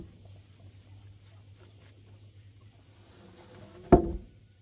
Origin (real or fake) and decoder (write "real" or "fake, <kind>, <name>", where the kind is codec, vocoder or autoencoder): real